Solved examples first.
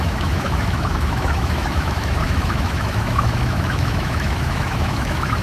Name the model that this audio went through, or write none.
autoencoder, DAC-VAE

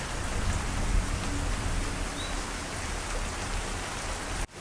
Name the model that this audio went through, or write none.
none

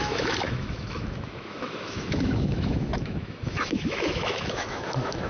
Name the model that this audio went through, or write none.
autoencoder, DAC-VAE